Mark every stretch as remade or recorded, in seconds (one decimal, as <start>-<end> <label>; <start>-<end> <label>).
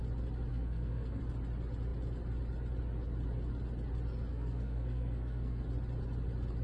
0.0-0.5 recorded; 0.5-1.2 remade; 1.2-4.3 recorded; 4.3-5.6 remade; 5.6-6.6 recorded